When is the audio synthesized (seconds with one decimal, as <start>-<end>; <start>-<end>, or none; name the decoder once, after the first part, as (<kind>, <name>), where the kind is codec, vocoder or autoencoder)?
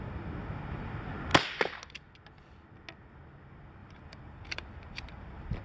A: 3.8-5.6 (vocoder, BigVGAN v2)